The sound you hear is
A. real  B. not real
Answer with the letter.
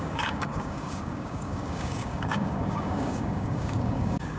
B